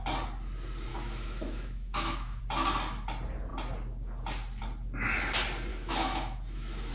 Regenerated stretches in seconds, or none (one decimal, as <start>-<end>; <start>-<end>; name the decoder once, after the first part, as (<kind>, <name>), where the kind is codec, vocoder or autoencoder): 0.9-2.4 (autoencoder, DAC-VAE); 5.7-6.9